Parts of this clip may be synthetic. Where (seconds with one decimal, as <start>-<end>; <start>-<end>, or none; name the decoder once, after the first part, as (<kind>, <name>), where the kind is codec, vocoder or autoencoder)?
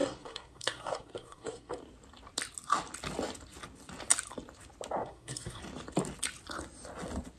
0.0-1.8 (codec, SNAC); 5.0-5.6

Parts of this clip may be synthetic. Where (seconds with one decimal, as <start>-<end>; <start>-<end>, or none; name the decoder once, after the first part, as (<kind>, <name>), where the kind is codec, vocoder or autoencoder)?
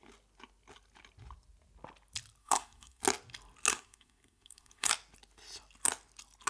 2.4-3.0 (codec, SNAC); 3.7-4.9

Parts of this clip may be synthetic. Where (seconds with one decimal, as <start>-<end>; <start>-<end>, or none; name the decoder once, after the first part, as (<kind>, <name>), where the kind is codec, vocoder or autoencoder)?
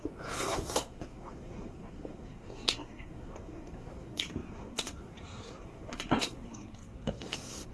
0.0-7.7 (codec, SNAC)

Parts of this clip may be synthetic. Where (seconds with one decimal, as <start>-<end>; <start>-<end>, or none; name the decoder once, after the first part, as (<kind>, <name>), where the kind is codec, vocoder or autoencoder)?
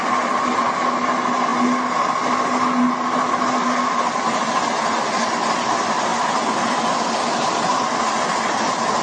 none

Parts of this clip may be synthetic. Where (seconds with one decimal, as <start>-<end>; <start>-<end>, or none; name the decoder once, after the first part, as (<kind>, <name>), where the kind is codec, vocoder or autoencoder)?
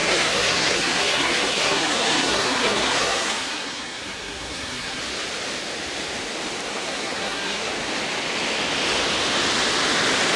0.0-5.0 (codec, SNAC); 6.7-7.7